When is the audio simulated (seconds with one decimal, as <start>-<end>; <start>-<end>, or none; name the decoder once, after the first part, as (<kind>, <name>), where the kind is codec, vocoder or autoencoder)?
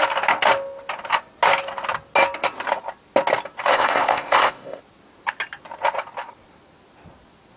3.7-4.8 (codec, ZipCodec)